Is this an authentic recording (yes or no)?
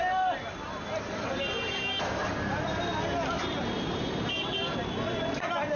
yes